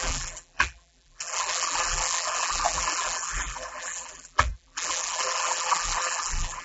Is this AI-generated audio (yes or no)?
yes